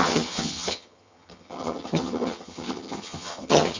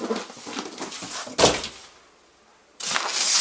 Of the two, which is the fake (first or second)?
first